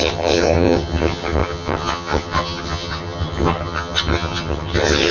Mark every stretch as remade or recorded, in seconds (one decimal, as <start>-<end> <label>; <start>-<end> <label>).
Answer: 0.0-5.1 remade